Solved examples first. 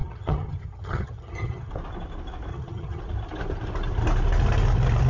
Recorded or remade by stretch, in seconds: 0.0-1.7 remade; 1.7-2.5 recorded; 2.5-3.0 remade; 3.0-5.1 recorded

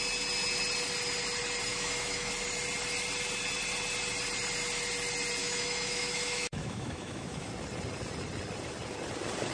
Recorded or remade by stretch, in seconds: 0.0-1.7 recorded; 1.7-2.3 remade; 2.3-5.4 recorded; 5.4-7.5 remade; 7.5-9.5 recorded

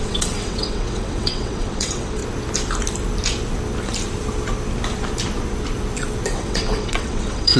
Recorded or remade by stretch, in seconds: 0.0-2.2 remade; 2.2-6.3 recorded; 6.3-7.6 remade

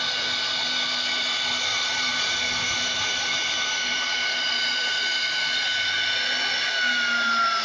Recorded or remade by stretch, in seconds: 0.0-1.7 recorded; 1.7-5.2 remade; 5.2-7.6 recorded

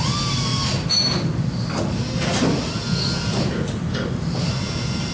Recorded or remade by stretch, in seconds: 0.0-5.1 recorded

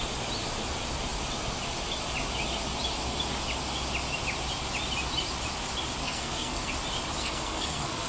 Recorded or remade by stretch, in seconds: 0.0-6.0 recorded; 6.0-6.7 remade; 6.7-7.2 recorded; 7.2-8.1 remade

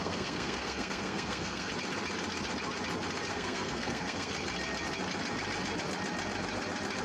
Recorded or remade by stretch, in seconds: 0.0-1.7 remade; 1.7-3.3 recorded; 3.3-4.3 remade; 4.3-7.0 recorded

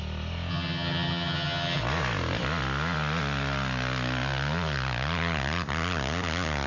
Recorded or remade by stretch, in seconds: 0.0-0.5 recorded; 0.5-1.8 remade; 1.8-6.7 recorded